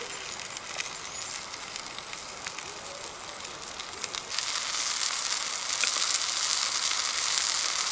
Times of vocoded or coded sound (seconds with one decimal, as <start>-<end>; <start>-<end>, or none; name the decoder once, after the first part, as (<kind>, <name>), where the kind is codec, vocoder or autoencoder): none